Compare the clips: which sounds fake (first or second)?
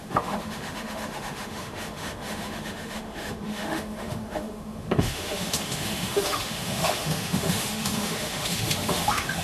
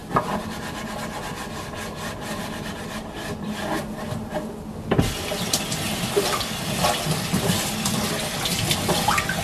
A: first